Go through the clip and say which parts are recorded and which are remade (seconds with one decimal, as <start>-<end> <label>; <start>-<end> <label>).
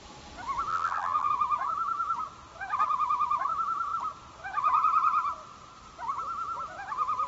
0.0-0.7 recorded; 0.7-1.3 remade; 1.3-7.3 recorded